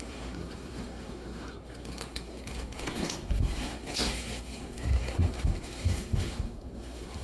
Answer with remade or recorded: remade